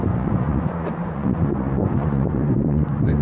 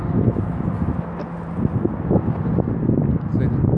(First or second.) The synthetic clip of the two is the first